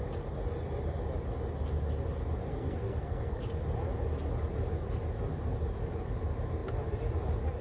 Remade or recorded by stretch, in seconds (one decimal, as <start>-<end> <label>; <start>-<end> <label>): 0.0-2.4 recorded; 2.4-3.4 remade; 3.4-7.6 recorded